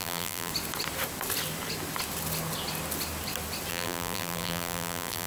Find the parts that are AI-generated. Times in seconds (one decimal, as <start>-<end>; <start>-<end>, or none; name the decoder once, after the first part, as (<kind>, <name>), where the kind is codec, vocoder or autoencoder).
0.0-0.5 (vocoder, BigVGAN v2); 3.7-5.3